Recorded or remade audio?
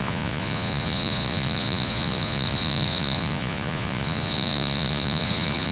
remade